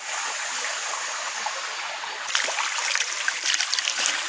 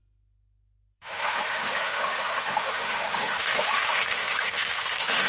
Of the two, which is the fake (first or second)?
second